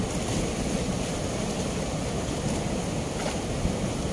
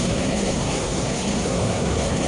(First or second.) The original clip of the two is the first